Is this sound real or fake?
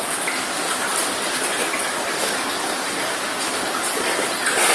real